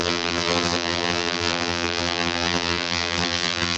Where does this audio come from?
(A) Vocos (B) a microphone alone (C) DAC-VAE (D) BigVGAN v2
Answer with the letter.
D